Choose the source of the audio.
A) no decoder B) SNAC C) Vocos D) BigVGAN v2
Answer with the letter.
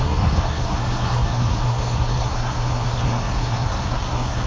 B